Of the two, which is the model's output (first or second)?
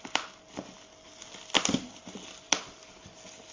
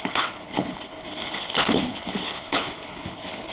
second